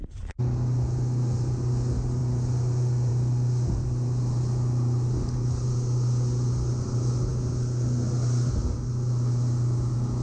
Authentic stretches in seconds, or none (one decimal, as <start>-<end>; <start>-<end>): 0.0-10.2